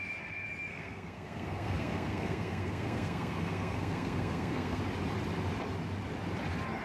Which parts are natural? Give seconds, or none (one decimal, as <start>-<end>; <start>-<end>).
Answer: 0.0-0.7; 4.8-6.8